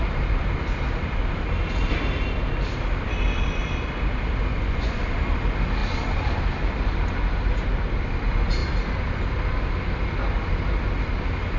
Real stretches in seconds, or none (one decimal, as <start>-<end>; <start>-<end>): 0.0-4.5; 5.0-11.6